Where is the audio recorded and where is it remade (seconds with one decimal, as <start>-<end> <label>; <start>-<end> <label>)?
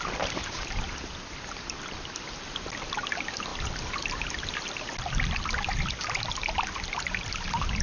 0.0-7.8 recorded